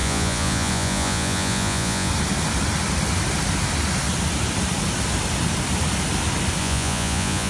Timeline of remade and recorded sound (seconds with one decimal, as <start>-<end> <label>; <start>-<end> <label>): 0.0-2.1 remade; 2.1-6.6 recorded; 6.6-7.5 remade